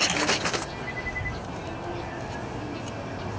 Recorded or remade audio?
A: recorded